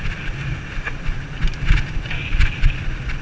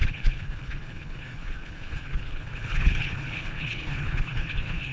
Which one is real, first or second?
first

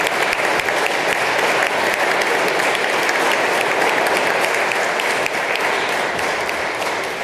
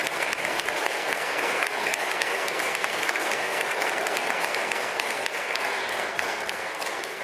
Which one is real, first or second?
first